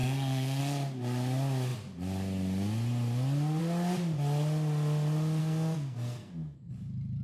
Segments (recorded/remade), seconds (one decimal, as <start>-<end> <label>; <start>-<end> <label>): 0.0-0.6 remade; 0.6-5.4 recorded; 5.4-6.7 remade; 6.7-7.2 recorded